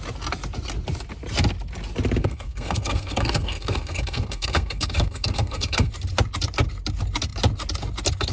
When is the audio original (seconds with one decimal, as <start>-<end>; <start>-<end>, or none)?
0.0-2.2; 5.9-8.3